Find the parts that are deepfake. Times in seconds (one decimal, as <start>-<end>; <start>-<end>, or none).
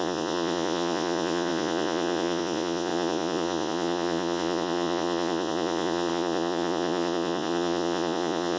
0.0-8.6